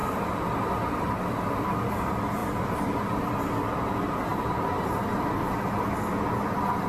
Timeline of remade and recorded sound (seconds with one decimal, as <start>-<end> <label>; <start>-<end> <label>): 0.0-1.9 remade; 1.9-2.4 recorded; 2.4-3.3 remade; 3.3-4.3 recorded; 4.3-5.0 remade; 5.0-6.9 recorded